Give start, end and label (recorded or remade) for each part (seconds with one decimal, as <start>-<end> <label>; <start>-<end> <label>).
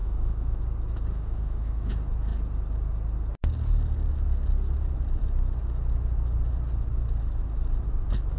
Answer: 0.0-0.6 remade; 0.6-1.1 recorded; 1.1-1.9 remade; 1.9-8.4 recorded